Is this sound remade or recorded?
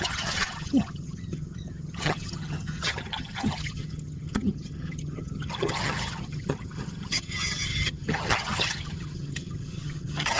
remade